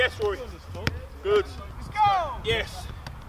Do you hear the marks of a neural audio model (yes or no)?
no